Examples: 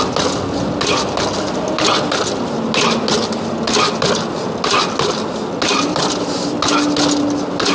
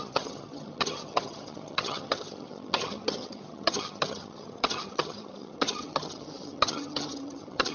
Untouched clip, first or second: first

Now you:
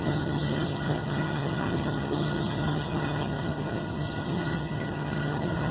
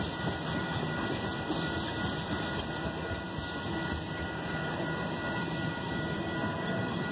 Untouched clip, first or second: second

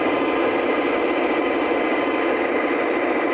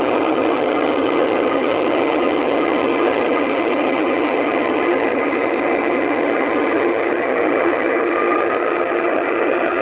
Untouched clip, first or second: first